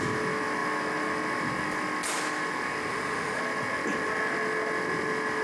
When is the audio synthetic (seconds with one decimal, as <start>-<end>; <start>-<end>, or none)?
2.9-3.4